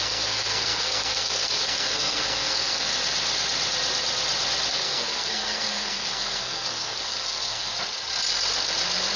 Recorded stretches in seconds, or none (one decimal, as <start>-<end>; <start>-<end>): 2.9-4.7; 7.7-9.2